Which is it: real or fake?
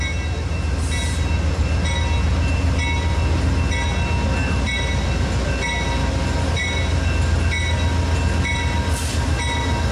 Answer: real